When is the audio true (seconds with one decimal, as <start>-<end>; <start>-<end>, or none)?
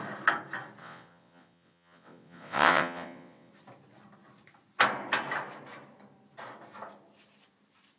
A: 0.0-0.8; 3.5-8.0